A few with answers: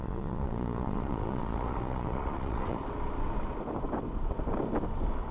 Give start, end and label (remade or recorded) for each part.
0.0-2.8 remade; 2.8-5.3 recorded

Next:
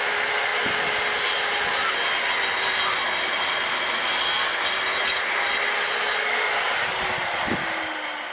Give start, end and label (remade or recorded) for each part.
0.0-4.9 recorded; 4.9-5.4 remade; 5.4-8.3 recorded

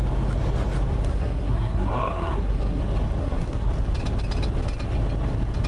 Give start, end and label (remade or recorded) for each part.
0.0-1.1 recorded; 1.1-2.8 remade; 2.8-3.2 recorded; 3.2-3.7 remade; 3.7-5.7 recorded

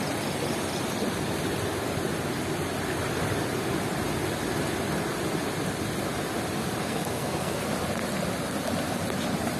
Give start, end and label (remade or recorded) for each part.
0.0-6.8 recorded; 6.8-7.6 remade; 7.6-9.6 recorded